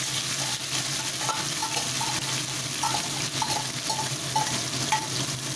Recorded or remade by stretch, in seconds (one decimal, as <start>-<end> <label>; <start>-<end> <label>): 0.0-5.6 recorded